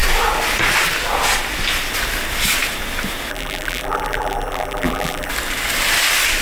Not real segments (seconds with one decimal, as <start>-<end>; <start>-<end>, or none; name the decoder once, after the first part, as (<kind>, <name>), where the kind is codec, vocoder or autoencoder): 3.3-5.3 (vocoder, BigVGAN v2)